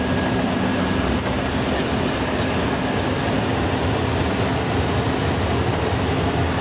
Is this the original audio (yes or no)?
yes